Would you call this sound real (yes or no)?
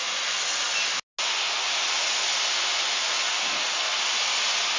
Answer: yes